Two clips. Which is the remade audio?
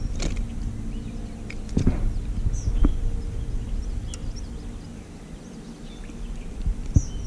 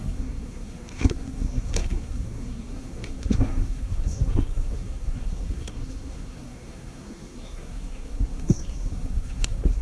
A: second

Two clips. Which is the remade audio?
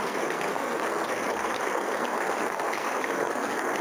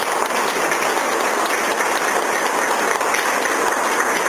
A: first